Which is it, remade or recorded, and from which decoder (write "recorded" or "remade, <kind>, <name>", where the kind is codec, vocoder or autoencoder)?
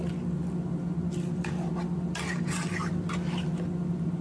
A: recorded